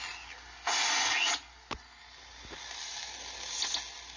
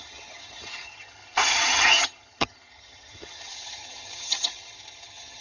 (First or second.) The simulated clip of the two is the second